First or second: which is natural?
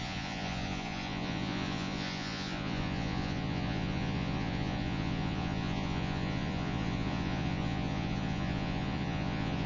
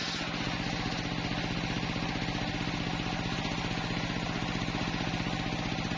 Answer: second